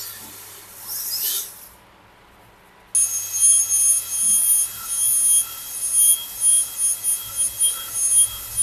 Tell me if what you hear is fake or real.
real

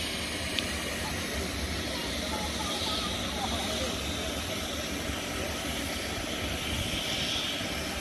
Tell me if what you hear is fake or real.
real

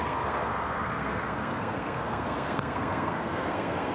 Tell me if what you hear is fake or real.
fake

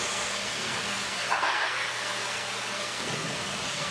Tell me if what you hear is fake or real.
fake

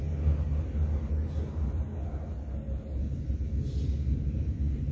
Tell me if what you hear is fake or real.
real